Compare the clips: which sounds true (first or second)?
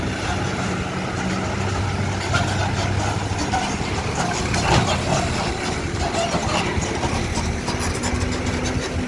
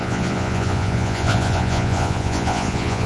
first